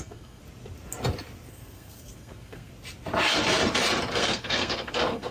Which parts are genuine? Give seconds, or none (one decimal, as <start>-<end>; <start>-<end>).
0.4-1.5; 2.7-4.1